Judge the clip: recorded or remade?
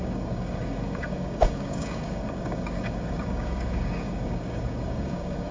remade